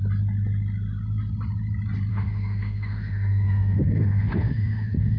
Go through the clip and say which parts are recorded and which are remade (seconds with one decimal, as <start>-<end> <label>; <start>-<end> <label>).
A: 0.0-2.1 recorded; 2.1-5.2 remade